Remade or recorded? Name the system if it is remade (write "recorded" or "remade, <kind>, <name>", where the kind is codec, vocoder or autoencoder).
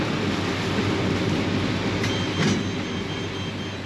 recorded